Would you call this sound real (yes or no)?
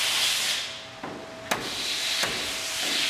yes